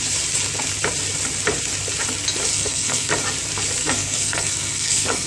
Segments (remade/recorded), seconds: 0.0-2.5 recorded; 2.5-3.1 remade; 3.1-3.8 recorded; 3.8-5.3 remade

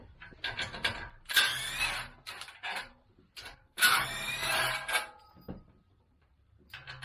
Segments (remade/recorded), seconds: 0.0-2.8 recorded; 2.8-6.3 remade; 6.3-7.0 recorded

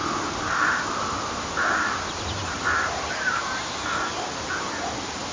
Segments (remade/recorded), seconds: 0.0-5.3 recorded

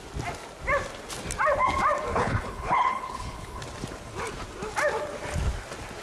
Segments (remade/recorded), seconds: 0.0-2.1 recorded; 2.1-3.6 remade; 3.6-6.0 recorded

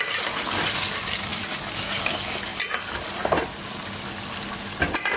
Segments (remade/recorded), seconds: 0.0-5.2 recorded